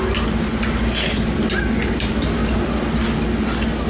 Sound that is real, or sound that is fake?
real